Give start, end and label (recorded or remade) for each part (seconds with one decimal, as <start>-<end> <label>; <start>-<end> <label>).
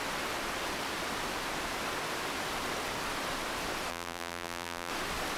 0.0-3.9 recorded; 3.9-4.9 remade; 4.9-5.4 recorded